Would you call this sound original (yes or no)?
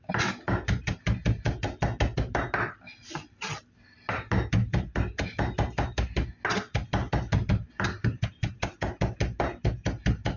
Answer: yes